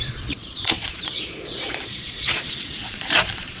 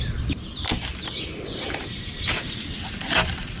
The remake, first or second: first